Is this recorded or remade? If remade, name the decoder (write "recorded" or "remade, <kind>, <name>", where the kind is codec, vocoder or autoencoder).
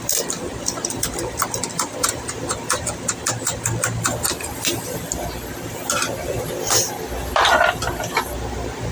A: remade, vocoder, BigVGAN v2